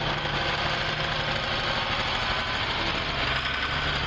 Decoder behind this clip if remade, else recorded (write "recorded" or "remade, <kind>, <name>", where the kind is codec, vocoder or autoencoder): recorded